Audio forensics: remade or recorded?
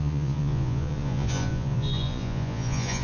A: remade